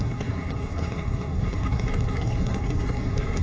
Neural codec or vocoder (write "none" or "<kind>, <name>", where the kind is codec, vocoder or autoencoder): codec, SNAC